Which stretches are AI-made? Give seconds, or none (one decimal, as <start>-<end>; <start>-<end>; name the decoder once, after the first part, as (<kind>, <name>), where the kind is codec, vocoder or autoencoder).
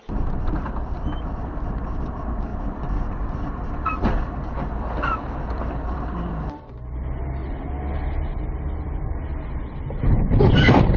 0.0-7.4 (vocoder, BigVGAN v2); 10.5-11.0